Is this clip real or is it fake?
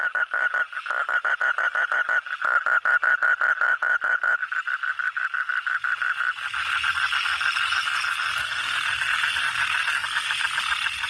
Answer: real